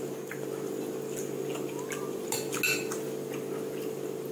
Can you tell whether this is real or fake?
real